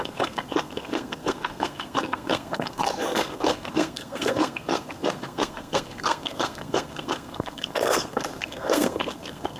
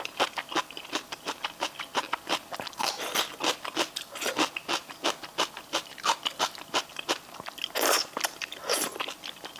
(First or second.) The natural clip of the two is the second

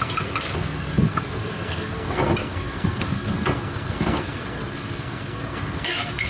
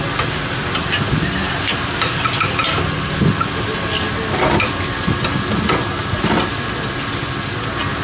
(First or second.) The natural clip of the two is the second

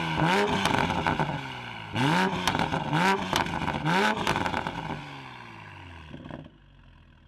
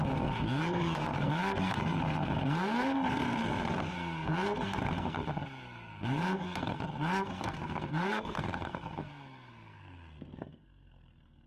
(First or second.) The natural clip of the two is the first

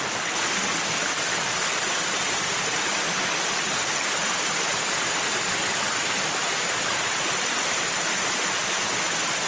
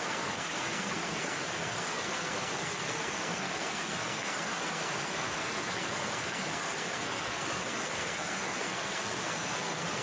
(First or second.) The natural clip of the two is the first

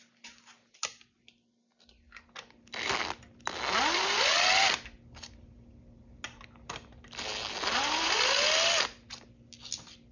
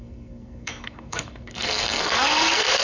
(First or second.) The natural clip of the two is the first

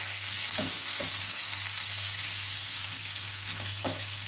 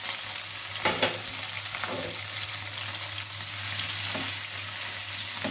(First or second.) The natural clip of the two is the second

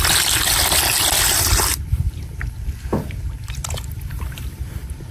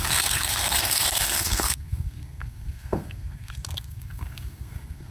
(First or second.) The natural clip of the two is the first